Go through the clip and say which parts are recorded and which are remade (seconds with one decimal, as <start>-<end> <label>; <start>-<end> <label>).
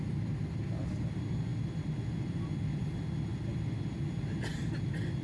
0.0-5.2 recorded